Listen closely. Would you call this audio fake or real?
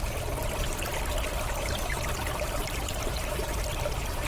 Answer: real